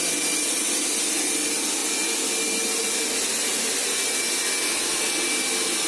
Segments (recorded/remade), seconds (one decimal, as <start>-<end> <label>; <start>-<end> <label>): 0.0-5.9 recorded